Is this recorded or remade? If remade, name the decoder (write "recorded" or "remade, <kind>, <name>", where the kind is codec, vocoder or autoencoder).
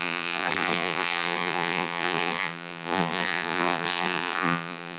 remade, vocoder, BigVGAN v2